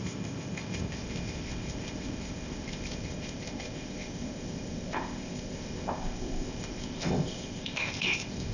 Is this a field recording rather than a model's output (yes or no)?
no